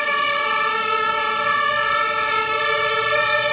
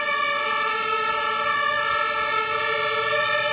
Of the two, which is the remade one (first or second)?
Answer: first